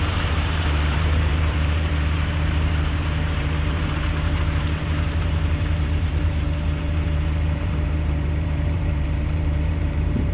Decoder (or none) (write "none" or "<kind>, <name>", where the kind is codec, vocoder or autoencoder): vocoder, BigVGAN v2